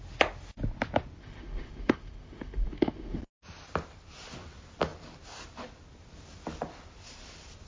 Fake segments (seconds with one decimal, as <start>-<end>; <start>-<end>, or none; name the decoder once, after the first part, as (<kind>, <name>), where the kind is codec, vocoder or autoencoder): 1.2-3.2 (autoencoder, DAC-VAE)